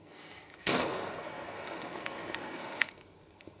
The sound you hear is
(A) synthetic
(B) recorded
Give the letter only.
A